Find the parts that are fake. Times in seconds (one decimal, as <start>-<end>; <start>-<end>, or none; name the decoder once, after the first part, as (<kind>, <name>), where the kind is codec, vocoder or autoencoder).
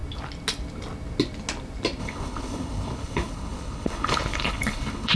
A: 2.0-5.2 (codec, HILCodec)